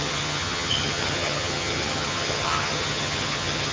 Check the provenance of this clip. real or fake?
fake